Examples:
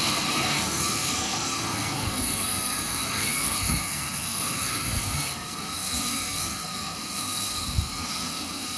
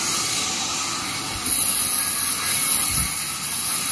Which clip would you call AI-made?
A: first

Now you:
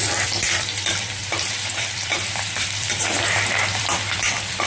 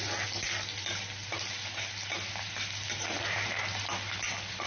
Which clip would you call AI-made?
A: first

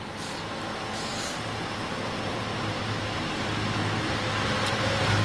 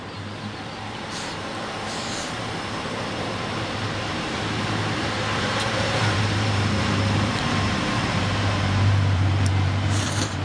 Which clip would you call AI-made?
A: second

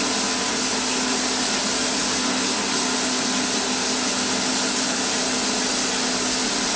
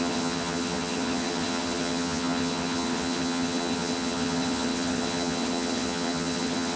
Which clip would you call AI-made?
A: second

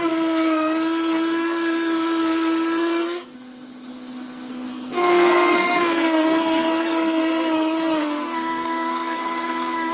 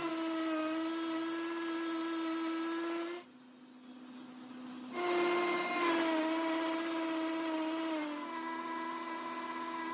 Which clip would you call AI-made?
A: first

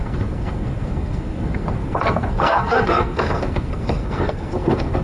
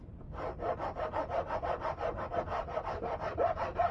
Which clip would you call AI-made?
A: first